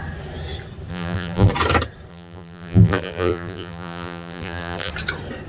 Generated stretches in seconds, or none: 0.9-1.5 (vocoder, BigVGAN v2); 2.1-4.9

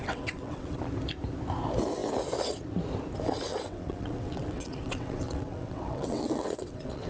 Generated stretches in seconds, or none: 0.0-0.8 (vocoder, WaveNeXt); 3.5-7.1

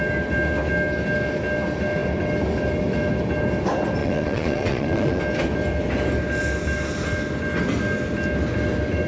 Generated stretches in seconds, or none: 4.0-5.2 (vocoder, Vocos)

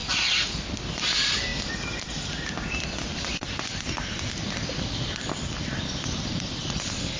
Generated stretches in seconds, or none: 0.6-7.2 (vocoder, BigVGAN v2)

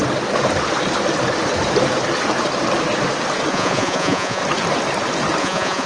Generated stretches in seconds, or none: 3.5-4.4 (vocoder, Vocos); 5.4-5.9